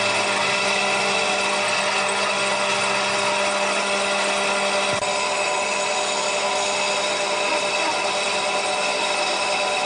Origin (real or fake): real